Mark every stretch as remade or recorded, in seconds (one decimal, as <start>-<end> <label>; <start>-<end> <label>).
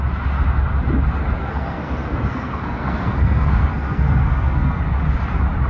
0.0-1.4 recorded; 1.4-4.8 remade; 4.8-5.7 recorded